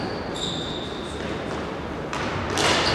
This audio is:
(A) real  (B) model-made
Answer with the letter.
A